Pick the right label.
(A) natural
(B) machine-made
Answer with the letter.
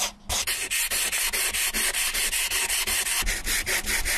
A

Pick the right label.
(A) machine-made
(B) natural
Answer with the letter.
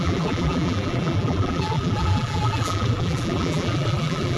A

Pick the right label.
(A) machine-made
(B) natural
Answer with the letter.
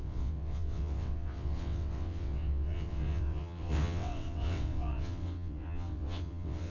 A